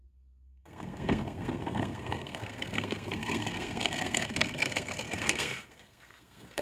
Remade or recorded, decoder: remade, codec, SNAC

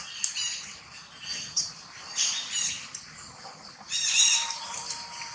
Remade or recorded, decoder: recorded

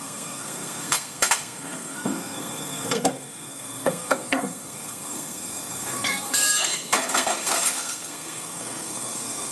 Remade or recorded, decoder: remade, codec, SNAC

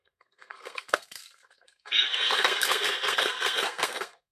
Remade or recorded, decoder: remade, codec, SNAC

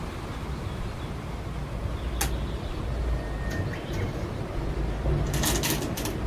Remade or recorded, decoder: recorded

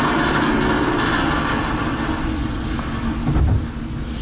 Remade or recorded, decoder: recorded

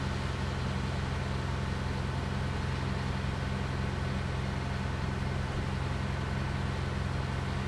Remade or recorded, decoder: recorded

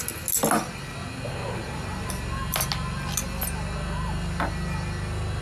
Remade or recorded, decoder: recorded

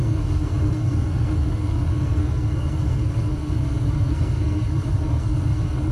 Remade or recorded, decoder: remade, codec, SNAC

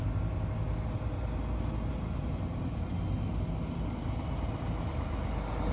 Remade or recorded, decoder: recorded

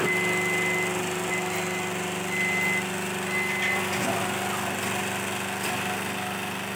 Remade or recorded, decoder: recorded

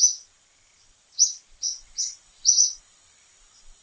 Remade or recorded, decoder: recorded